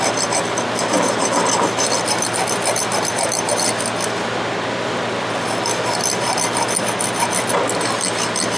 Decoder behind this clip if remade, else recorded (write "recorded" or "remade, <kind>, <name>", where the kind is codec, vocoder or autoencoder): recorded